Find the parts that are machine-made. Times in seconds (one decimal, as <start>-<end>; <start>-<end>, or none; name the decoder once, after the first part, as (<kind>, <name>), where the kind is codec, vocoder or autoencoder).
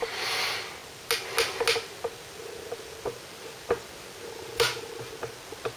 none